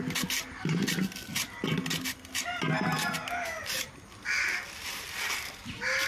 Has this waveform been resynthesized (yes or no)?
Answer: no